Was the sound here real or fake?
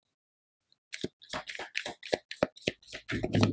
real